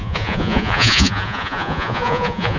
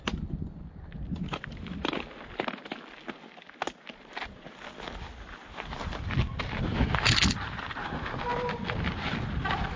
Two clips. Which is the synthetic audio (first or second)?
first